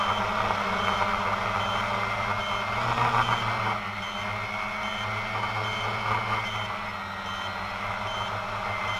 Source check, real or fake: real